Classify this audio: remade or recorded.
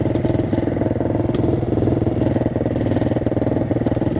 recorded